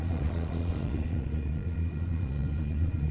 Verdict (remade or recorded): remade